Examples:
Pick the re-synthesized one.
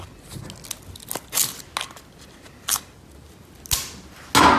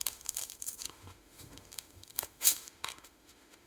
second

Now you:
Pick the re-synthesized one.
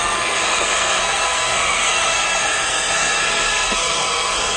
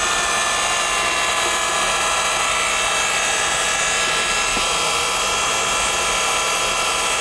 first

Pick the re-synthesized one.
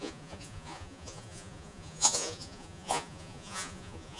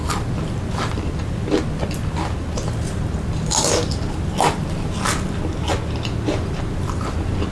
first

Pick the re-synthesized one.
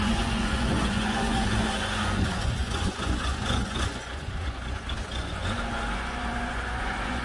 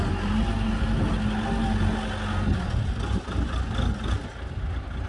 first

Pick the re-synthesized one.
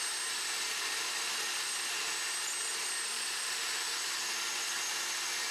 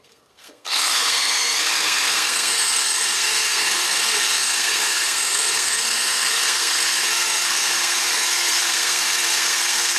second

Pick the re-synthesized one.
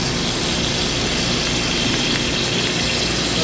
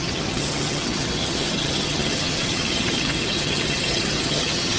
second